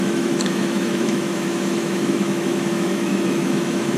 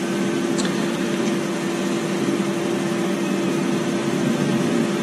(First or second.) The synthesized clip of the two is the first